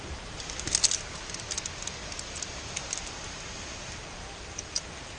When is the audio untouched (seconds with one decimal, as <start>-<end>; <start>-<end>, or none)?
0.0-5.2